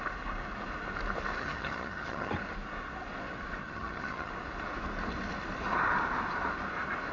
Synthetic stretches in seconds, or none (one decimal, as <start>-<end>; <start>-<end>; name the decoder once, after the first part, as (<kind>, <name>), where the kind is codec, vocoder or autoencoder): 1.4-2.3 (vocoder, HiFi-GAN); 3.6-4.3